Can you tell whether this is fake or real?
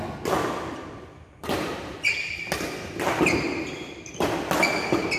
real